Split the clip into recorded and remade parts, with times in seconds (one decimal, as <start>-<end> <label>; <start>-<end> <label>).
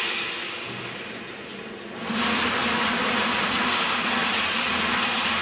0.0-1.5 remade; 1.5-2.1 recorded; 2.1-2.6 remade; 2.6-3.2 recorded; 3.2-4.2 remade; 4.2-4.7 recorded; 4.7-5.4 remade